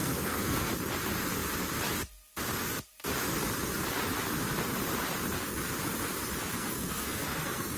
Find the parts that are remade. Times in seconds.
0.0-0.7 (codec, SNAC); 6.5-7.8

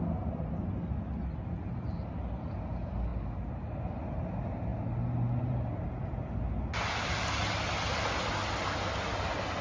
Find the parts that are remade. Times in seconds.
none

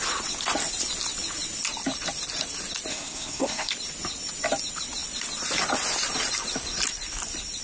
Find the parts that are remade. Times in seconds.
2.9-3.7 (codec, SNAC)

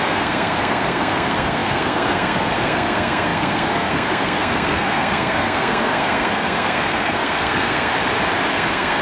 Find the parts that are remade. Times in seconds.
0.0-7.9 (codec, SNAC); 8.5-9.0

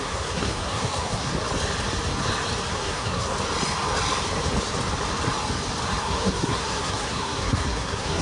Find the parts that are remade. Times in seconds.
0.0-1.3 (codec, SNAC); 2.7-3.3; 6.0-8.2

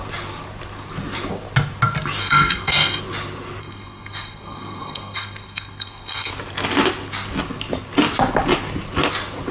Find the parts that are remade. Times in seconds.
2.2-3.0 (codec, SNAC); 3.6-6.3